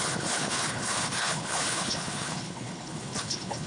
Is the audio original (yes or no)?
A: no